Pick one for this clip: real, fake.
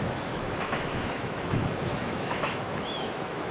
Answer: fake